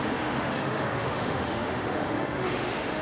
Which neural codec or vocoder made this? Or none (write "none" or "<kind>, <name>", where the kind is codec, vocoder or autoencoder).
autoencoder, DAC-VAE